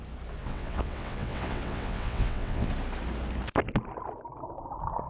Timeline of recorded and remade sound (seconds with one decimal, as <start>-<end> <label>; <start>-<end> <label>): 0.0-0.4 recorded; 0.4-2.7 remade; 2.7-5.1 recorded